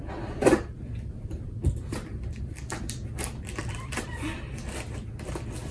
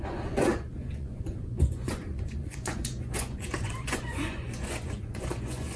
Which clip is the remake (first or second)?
second